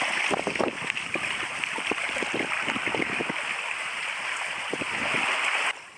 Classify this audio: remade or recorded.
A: recorded